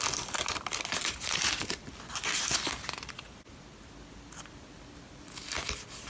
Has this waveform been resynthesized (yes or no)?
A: no